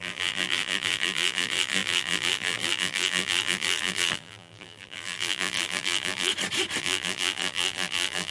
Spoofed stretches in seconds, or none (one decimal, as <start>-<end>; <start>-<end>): 0.0-6.3; 6.8-8.3